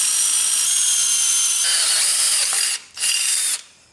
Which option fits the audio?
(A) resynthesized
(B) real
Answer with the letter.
B